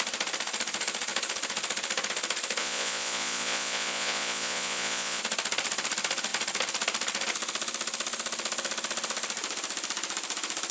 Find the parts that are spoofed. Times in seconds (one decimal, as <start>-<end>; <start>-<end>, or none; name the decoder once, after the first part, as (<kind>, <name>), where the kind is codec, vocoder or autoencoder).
2.6-5.2 (vocoder, Vocos)